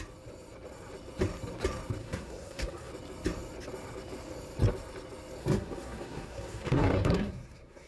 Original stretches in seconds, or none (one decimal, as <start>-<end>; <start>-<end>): 0.0-2.0; 2.9-5.4